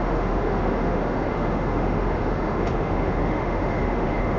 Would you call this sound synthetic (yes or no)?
yes